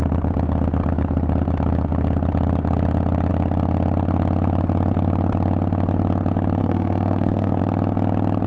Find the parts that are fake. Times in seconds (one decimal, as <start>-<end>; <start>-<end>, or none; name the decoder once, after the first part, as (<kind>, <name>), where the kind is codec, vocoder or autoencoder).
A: 6.6-7.6 (codec, SNAC)